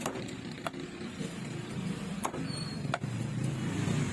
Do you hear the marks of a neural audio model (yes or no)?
yes